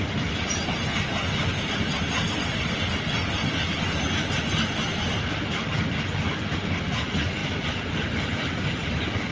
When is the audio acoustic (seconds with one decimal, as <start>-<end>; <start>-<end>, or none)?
0.0-9.3